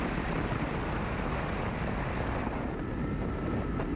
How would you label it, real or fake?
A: real